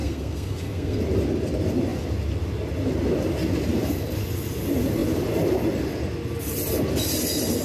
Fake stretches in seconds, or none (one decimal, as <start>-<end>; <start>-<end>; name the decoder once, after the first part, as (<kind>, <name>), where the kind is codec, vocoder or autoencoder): 0.0-1.0 (codec, SNAC)